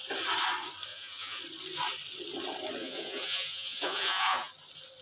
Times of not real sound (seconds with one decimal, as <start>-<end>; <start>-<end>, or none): 0.9-1.4; 2.8-4.5